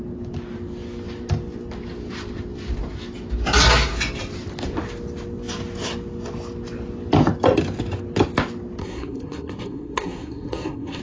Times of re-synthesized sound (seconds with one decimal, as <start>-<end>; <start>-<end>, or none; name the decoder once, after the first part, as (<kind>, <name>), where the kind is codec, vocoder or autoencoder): 8.8-11.0 (codec, SNAC)